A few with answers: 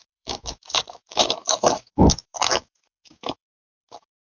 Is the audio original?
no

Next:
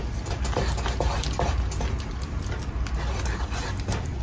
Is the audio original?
yes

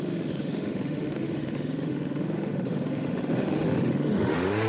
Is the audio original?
no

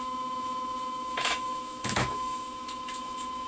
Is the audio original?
no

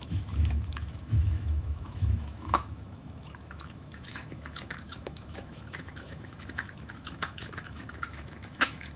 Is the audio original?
no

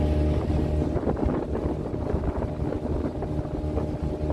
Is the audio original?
yes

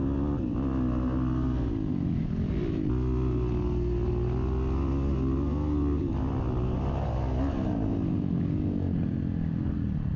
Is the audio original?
yes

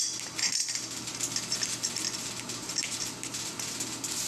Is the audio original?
yes